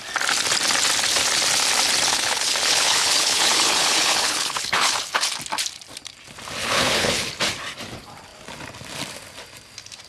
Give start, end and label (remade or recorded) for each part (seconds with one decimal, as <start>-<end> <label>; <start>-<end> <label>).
0.0-2.1 recorded; 2.1-5.2 remade; 5.2-6.6 recorded; 6.6-7.3 remade; 7.3-10.1 recorded